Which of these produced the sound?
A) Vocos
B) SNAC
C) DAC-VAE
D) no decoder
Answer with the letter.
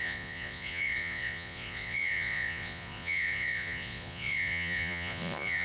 A